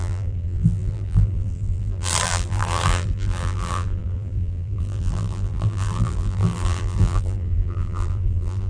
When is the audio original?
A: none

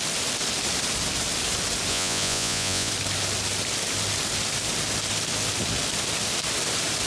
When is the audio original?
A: 0.0-1.9; 2.9-7.1

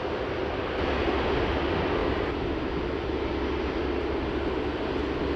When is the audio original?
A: 0.0-5.4